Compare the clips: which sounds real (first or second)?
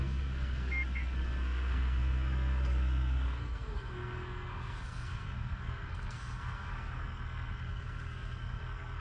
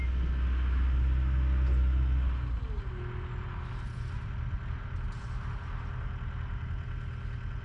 second